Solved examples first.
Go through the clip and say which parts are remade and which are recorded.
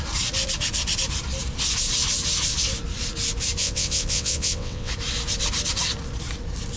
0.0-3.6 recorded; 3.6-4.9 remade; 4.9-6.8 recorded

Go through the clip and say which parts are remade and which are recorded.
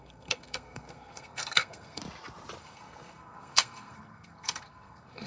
0.0-2.0 remade; 2.0-2.6 recorded; 2.6-5.3 remade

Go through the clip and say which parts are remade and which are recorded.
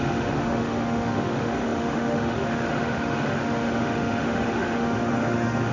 0.0-5.7 remade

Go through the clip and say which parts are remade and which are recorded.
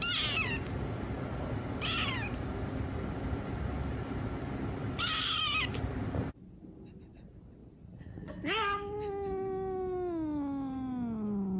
0.0-7.6 recorded; 7.6-8.3 remade; 8.3-11.6 recorded